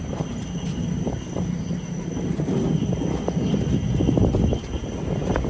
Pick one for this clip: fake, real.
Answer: real